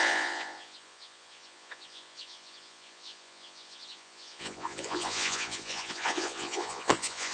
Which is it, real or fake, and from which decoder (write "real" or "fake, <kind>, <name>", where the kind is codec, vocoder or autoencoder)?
fake, vocoder, Vocos